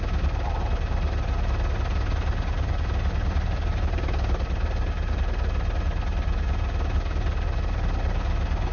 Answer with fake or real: real